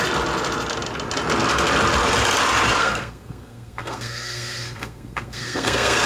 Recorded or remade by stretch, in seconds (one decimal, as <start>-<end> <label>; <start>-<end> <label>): 0.0-2.8 recorded; 2.8-6.1 remade